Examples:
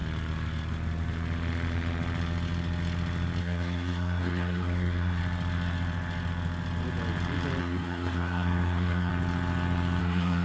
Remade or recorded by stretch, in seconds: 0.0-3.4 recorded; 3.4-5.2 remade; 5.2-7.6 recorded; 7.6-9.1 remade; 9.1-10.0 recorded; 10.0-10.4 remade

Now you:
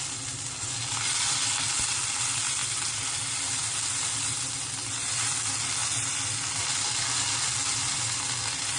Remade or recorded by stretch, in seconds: 0.0-8.8 recorded

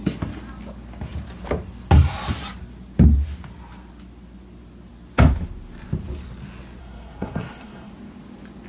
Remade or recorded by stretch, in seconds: 0.0-6.8 recorded; 6.8-7.9 remade; 7.9-8.7 recorded

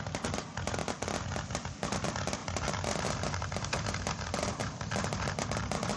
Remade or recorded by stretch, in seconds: 0.0-2.4 recorded; 2.4-4.6 remade; 4.6-6.0 recorded

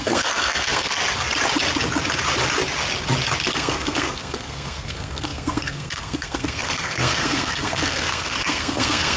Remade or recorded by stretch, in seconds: 0.0-1.0 remade; 1.0-3.5 recorded; 3.5-9.2 remade

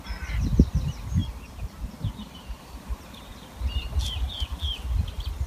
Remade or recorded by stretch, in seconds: 0.0-1.2 recorded; 1.2-2.6 remade; 2.6-5.5 recorded

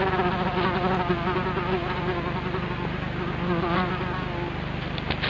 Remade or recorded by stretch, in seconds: 0.0-5.3 recorded

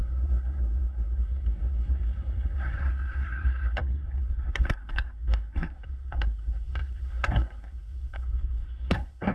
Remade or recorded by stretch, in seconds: 0.0-9.3 remade